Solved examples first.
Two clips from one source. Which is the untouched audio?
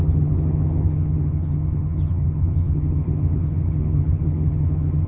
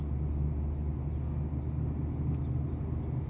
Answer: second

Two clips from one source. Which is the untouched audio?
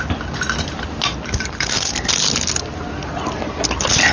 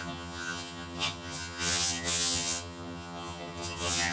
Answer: first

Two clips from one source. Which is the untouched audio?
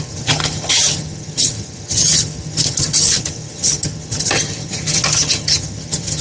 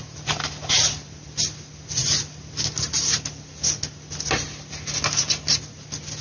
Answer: second